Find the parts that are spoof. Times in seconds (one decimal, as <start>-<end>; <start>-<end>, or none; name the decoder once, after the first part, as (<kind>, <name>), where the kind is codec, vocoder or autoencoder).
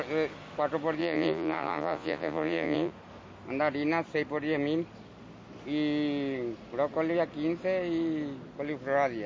1.0-2.9 (vocoder, Vocos)